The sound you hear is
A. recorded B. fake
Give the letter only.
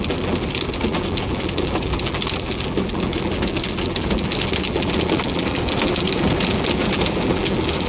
B